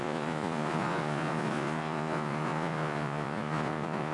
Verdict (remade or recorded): remade